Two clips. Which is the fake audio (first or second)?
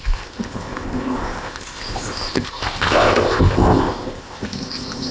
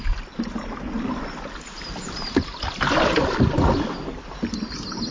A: first